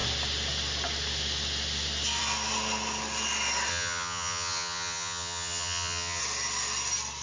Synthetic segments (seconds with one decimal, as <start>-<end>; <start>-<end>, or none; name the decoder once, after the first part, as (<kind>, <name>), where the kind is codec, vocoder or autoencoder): 3.7-6.2 (vocoder, HiFi-GAN)